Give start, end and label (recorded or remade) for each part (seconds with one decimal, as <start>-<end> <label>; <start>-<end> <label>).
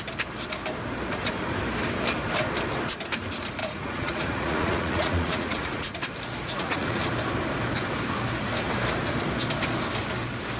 0.0-3.6 recorded; 3.6-6.0 remade; 6.0-6.4 recorded; 6.4-7.0 remade; 7.0-10.6 recorded